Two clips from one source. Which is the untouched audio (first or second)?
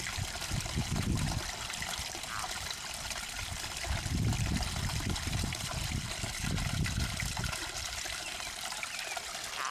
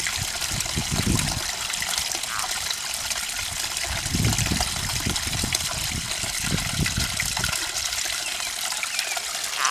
second